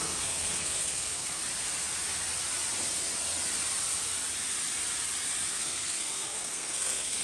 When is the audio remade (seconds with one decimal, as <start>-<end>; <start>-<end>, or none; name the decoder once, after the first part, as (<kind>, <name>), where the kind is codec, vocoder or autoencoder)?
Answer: 0.0-1.4 (codec, SNAC); 5.5-7.2